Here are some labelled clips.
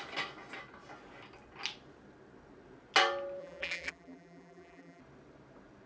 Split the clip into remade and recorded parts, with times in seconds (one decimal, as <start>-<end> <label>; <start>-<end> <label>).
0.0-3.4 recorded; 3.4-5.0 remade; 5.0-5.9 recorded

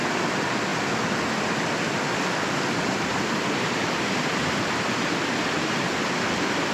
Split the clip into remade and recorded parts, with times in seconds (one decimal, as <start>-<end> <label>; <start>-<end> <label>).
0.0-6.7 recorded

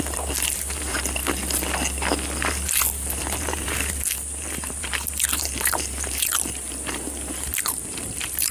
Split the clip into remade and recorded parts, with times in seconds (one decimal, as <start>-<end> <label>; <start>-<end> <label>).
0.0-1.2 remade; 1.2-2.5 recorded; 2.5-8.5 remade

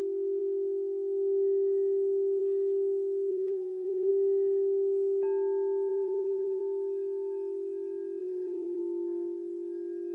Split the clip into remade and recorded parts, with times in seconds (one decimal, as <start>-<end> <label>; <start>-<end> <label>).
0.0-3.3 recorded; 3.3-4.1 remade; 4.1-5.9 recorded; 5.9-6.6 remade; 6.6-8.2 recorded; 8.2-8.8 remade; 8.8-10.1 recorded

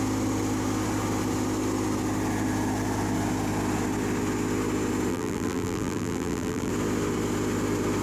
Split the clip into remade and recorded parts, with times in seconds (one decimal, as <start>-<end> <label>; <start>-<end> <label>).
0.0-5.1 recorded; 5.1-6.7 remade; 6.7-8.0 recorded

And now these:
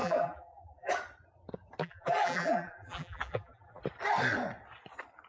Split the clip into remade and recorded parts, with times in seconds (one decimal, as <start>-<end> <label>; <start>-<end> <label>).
0.0-0.9 remade; 0.9-1.8 recorded; 1.8-3.8 remade; 3.8-5.3 recorded

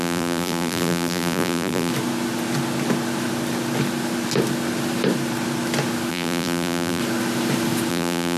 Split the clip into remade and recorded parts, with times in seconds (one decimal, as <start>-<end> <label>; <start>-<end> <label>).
0.0-1.9 remade; 1.9-6.1 recorded; 6.1-7.0 remade; 7.0-7.9 recorded; 7.9-8.4 remade